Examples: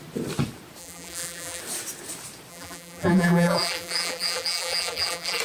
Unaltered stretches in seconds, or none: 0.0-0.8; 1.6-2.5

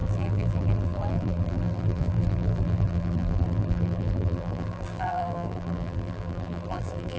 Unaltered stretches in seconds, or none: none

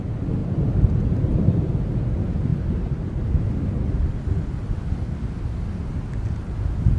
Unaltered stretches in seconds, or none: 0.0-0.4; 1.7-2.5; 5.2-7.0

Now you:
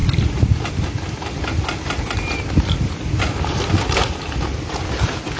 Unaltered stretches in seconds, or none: 0.0-5.4